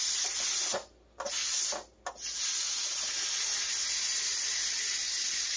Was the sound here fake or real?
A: real